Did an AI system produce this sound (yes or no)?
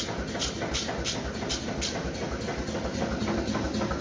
no